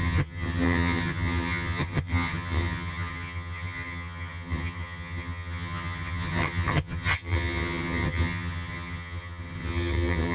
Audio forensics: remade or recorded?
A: remade